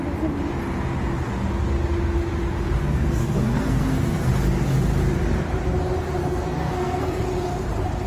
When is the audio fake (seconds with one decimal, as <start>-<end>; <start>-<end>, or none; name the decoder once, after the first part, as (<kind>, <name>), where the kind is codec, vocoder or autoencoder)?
2.8-4.3 (codec, SNAC); 6.2-7.2